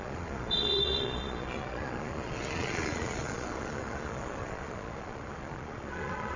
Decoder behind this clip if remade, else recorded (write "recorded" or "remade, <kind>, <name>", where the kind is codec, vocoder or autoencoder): remade, vocoder, Vocos